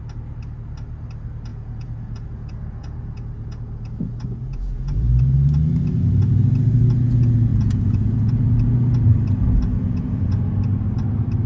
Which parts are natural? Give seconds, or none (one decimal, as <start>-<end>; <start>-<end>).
0.0-1.5; 5.1-7.5; 8.3-9.7; 10.4-11.5